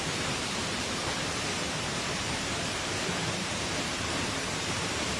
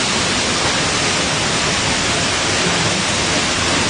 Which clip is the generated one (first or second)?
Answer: first